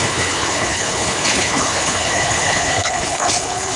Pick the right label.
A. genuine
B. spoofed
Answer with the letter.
B